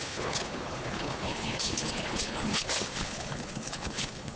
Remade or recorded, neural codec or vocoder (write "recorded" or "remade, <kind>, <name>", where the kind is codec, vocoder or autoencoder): remade, codec, HILCodec